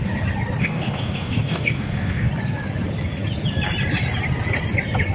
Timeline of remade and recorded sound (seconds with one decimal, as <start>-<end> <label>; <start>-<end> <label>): 0.0-0.6 recorded; 0.6-2.3 remade; 2.3-5.1 recorded